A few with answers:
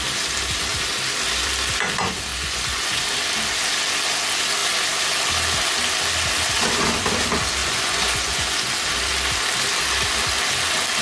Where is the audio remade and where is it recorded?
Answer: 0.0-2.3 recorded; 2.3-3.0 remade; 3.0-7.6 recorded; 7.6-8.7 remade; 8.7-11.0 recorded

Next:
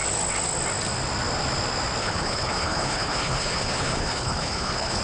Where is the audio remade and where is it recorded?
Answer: 0.0-2.0 recorded; 2.0-5.0 remade

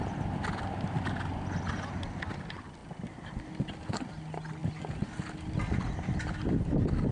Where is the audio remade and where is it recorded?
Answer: 0.0-7.1 recorded

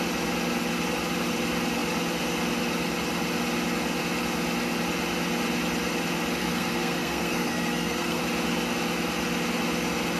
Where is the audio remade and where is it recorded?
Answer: 0.0-6.4 recorded; 6.4-8.2 remade; 8.2-10.2 recorded

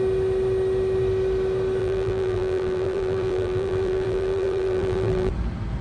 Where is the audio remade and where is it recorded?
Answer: 0.0-1.8 recorded; 1.8-5.3 remade; 5.3-5.8 recorded